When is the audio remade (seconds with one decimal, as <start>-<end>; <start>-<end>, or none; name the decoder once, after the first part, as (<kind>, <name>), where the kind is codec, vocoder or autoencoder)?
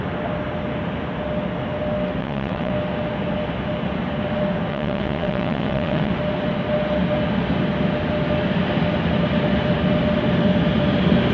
2.2-2.7 (vocoder, WaveNeXt); 4.7-6.1